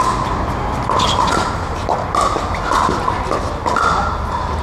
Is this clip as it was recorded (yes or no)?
yes